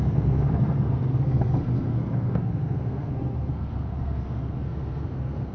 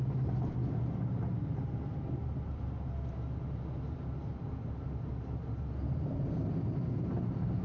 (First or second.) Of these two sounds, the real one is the second